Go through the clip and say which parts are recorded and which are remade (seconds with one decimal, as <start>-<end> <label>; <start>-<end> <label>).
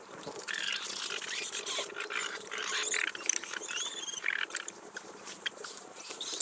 0.0-0.7 remade; 0.7-1.9 recorded; 1.9-2.8 remade; 2.8-3.6 recorded; 3.6-6.4 remade